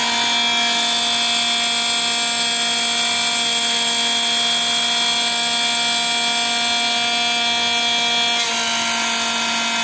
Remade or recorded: recorded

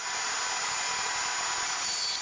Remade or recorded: recorded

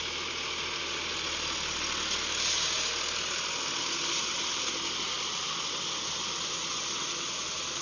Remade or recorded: recorded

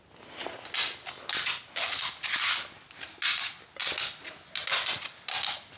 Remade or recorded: recorded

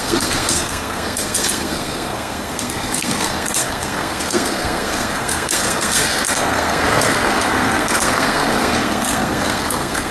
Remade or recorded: remade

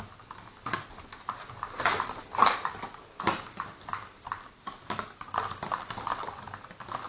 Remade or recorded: recorded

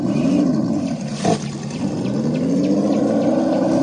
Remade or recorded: recorded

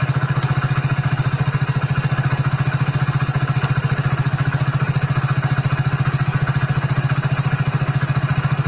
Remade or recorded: recorded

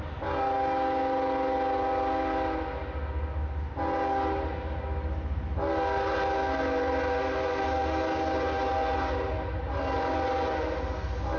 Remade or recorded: recorded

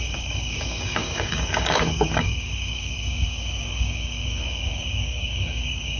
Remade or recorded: remade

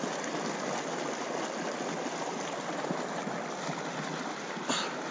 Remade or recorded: recorded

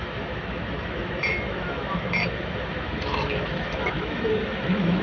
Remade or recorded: remade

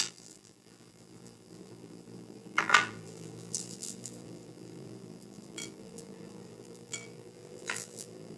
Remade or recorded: remade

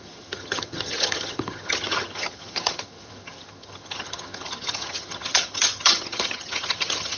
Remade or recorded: remade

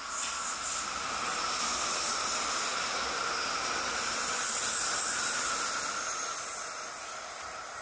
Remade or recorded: recorded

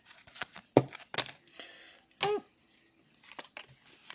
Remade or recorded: recorded